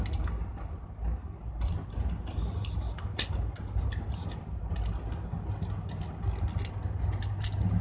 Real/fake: real